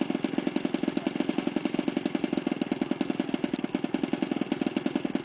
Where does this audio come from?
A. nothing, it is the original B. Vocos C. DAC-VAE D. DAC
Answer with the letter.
A